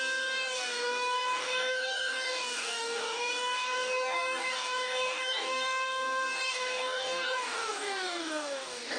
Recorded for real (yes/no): no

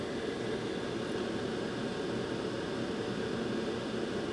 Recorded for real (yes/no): yes